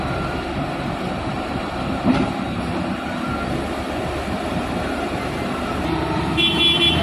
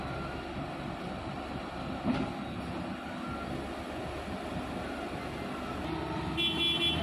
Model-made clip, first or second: first